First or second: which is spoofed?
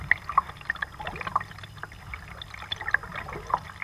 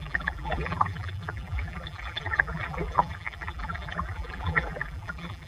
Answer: second